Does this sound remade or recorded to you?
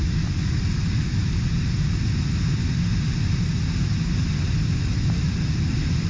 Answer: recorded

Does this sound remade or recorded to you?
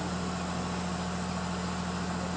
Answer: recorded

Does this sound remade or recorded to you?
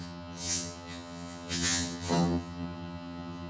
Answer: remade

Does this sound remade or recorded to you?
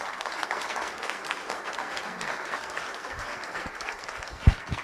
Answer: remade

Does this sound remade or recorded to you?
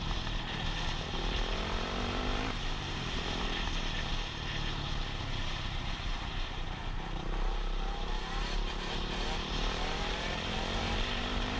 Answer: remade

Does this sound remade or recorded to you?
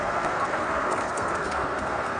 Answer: remade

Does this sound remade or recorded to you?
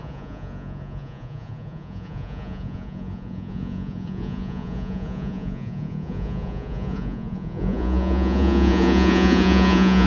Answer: remade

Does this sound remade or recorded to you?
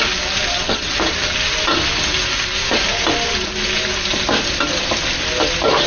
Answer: recorded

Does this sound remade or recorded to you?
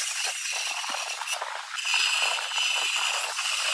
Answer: recorded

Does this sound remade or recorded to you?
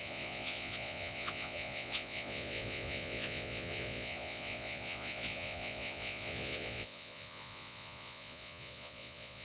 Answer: remade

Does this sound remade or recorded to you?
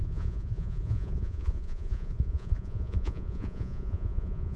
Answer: remade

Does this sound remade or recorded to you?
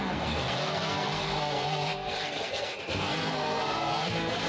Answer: remade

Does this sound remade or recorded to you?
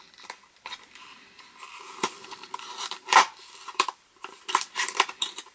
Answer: remade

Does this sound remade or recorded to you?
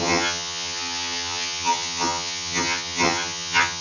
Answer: remade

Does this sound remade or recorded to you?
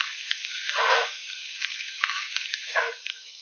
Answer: remade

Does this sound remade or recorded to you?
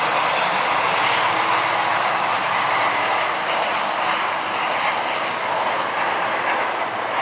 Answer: recorded